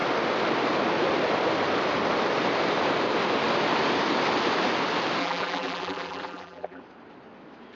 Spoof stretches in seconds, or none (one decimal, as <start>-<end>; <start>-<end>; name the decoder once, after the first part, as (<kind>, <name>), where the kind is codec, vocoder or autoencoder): 5.2-6.8 (vocoder, BigVGAN v2)